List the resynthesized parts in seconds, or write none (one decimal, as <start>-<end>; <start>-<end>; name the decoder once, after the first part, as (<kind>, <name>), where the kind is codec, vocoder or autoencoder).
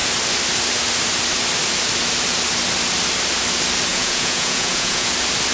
3.9-5.1 (vocoder, Vocos)